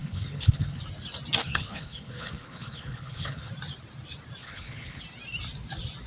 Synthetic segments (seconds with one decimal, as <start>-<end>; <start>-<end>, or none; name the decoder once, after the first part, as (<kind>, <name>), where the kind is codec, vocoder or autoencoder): 0.0-0.8 (codec, HILCodec); 1.4-3.5; 4.4-5.0